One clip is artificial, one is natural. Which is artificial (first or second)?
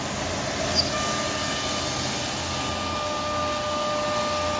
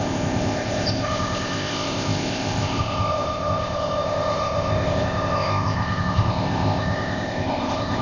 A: second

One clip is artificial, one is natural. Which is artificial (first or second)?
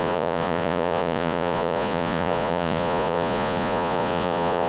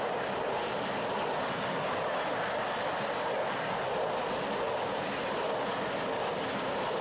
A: first